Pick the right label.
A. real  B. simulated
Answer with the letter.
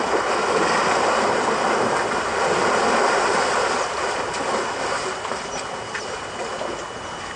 A